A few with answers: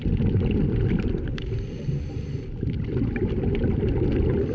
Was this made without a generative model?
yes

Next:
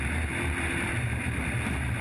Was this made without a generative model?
no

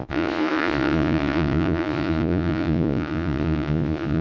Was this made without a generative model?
no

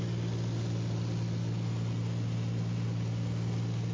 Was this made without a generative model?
yes